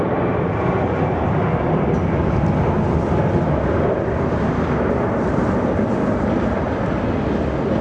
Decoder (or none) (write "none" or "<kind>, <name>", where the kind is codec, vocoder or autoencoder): none